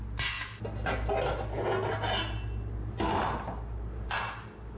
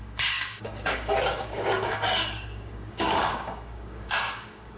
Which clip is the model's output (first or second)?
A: second